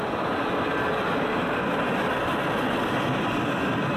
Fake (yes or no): no